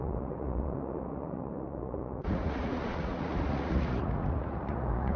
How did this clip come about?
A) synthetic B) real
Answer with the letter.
A